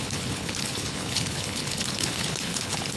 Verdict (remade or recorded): remade